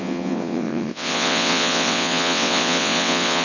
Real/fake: fake